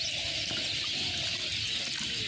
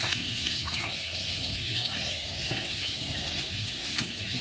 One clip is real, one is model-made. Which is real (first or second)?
first